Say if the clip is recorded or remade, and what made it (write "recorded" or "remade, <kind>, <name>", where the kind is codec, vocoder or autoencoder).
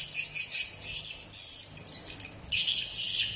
recorded